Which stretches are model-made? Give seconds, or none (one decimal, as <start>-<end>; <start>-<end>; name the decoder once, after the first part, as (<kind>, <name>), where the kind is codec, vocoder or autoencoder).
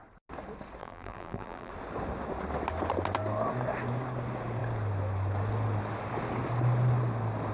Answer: 0.8-1.7 (vocoder, BigVGAN v2)